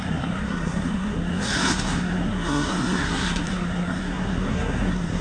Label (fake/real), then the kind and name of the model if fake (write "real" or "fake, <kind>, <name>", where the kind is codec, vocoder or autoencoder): fake, codec, SNAC